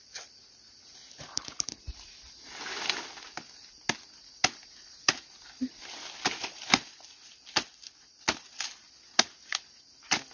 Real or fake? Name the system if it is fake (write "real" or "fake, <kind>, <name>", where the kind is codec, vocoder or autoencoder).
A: real